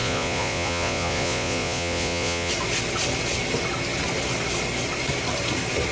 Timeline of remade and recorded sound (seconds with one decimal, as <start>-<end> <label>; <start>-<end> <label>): 0.0-2.5 remade; 2.5-5.9 recorded